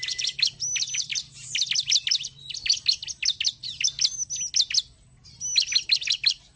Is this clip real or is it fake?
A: real